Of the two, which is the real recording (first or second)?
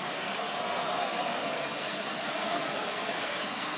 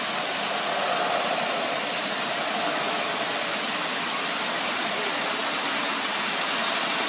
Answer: second